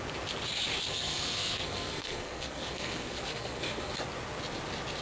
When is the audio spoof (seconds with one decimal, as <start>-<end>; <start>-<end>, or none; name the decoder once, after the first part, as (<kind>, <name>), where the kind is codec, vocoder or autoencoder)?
0.9-3.9 (codec, SNAC)